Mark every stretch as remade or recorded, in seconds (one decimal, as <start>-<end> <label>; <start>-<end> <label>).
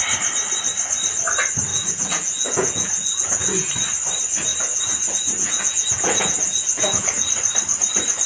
0.0-1.7 recorded; 1.7-3.7 remade; 3.7-4.5 recorded; 4.5-7.3 remade; 7.3-8.3 recorded